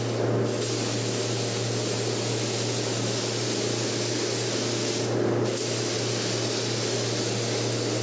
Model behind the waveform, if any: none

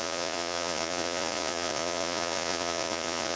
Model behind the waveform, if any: vocoder, Vocos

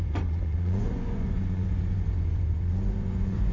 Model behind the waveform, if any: vocoder, Vocos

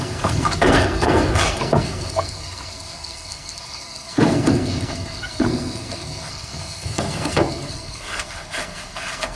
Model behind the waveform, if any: codec, SNAC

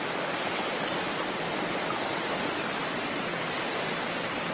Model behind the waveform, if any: none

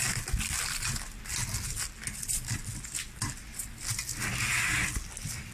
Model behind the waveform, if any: none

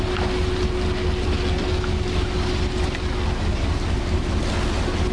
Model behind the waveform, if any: none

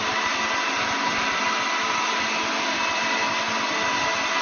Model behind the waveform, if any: none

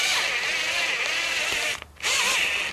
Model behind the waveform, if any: none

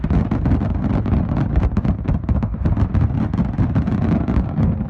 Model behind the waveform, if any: none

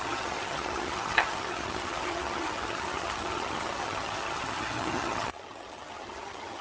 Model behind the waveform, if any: vocoder, HiFi-GAN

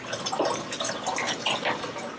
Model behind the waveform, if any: none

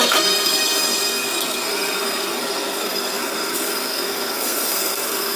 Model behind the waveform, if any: codec, SNAC